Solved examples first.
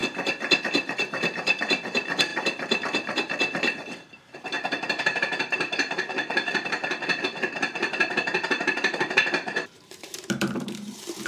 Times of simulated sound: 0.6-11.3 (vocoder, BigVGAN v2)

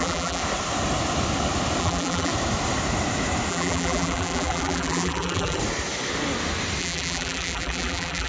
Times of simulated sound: 0.0-0.4 (vocoder, BigVGAN v2); 1.8-2.3; 3.5-5.6; 6.8-8.3

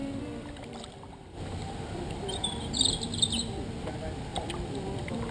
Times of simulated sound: 0.0-2.9 (vocoder, BigVGAN v2); 4.3-5.3